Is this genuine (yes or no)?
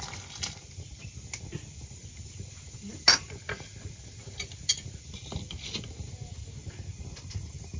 yes